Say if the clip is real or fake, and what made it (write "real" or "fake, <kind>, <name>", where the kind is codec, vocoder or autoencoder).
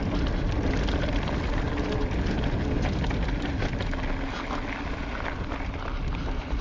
real